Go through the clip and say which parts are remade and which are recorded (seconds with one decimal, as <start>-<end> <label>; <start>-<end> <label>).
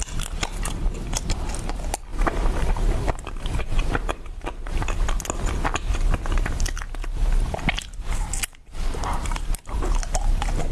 0.0-2.1 recorded; 2.1-5.2 remade; 5.2-8.5 recorded; 8.5-9.5 remade; 9.5-10.7 recorded